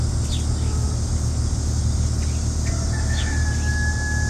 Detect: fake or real real